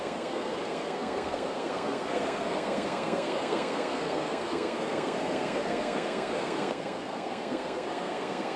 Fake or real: fake